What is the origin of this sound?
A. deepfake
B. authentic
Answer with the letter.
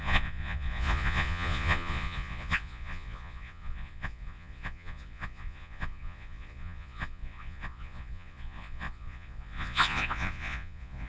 A